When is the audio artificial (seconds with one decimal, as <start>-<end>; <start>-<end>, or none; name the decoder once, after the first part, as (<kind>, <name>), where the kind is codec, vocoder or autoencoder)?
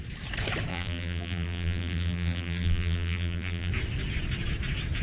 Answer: 0.7-3.7 (vocoder, BigVGAN v2)